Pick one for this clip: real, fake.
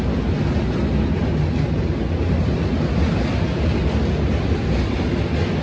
real